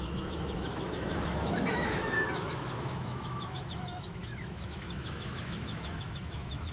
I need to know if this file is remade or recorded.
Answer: remade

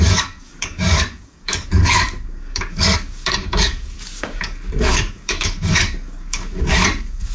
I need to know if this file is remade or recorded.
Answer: remade